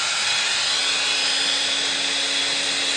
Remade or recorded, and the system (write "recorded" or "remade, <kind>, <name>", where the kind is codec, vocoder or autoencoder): recorded